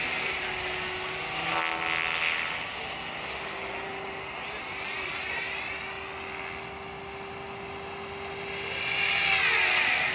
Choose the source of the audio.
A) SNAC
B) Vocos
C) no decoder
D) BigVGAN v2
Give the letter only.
C